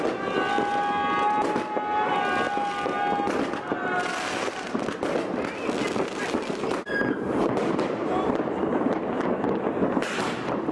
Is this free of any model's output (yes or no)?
yes